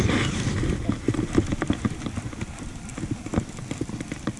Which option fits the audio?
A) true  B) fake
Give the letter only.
A